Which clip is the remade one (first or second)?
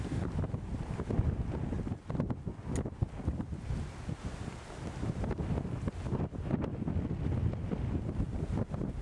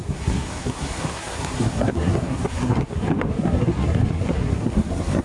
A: second